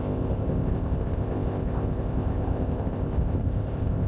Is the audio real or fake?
fake